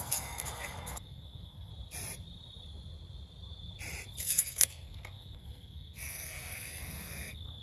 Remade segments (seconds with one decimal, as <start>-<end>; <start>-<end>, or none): 0.0-1.7; 4.2-7.6